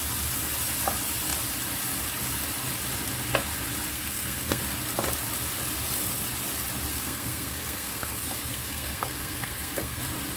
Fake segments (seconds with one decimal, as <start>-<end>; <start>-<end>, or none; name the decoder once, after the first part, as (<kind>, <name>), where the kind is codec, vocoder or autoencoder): 3.9-4.6 (codec, SNAC); 6.9-10.0